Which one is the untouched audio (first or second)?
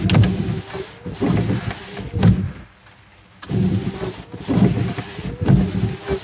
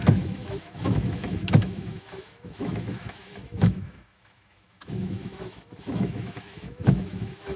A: first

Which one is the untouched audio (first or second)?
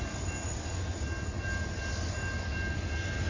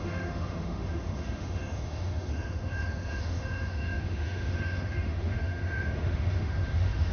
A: first